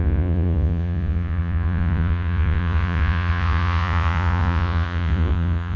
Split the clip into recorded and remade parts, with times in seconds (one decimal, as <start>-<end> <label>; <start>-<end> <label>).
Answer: 0.0-5.8 remade